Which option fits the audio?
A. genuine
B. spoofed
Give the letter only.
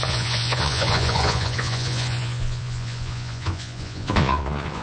B